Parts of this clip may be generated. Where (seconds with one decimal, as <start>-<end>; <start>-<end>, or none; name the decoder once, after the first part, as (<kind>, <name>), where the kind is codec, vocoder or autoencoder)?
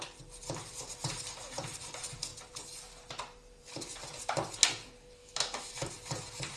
5.2-5.9 (autoencoder, DAC-VAE)